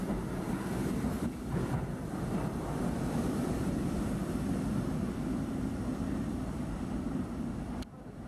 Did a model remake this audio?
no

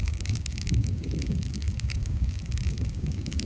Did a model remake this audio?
yes